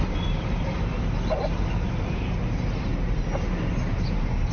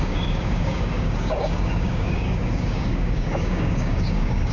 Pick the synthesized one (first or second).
second